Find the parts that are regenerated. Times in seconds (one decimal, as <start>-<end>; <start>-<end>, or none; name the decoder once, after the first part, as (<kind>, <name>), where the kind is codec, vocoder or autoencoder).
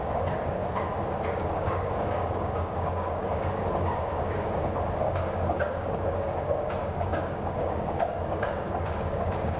0.0-0.6 (codec, DAC); 1.3-4.6; 5.1-9.6